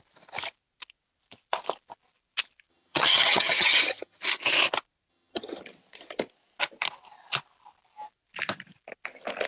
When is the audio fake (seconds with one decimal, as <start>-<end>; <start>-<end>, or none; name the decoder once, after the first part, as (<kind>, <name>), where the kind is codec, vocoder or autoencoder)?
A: 2.7-4.2 (vocoder, HiFi-GAN); 5.1-5.6